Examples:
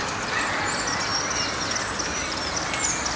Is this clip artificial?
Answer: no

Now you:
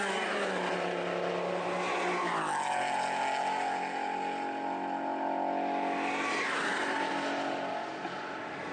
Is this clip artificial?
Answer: no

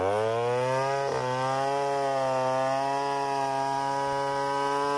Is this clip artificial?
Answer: no